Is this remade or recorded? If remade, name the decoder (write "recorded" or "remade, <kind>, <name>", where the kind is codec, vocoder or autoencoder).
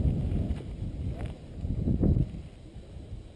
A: recorded